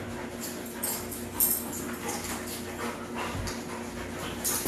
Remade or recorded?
recorded